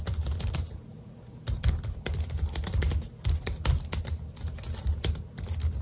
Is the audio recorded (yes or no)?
yes